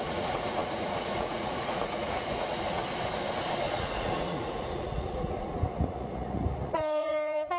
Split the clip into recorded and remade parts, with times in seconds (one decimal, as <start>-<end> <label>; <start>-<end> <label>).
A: 0.0-2.8 remade; 2.8-3.6 recorded; 3.6-7.6 remade